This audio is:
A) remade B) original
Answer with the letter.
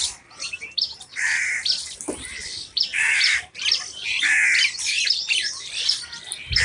A